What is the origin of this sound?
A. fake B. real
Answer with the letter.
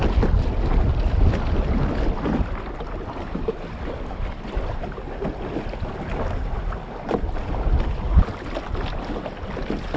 B